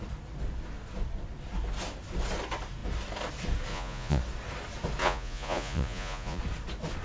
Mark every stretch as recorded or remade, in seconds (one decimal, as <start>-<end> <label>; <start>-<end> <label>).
0.0-3.7 recorded; 3.7-4.2 remade; 4.2-5.0 recorded; 5.0-6.4 remade; 6.4-7.0 recorded